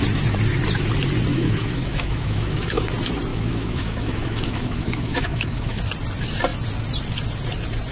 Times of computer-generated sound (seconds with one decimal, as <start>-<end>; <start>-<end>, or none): 1.3-2.8; 3.3-5.8